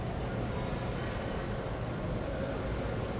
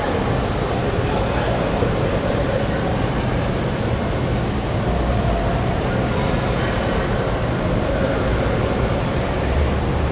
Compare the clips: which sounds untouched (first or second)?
first